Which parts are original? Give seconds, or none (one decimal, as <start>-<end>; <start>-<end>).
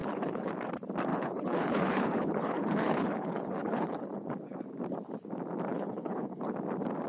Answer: 0.5-1.1; 4.3-5.7; 6.4-7.1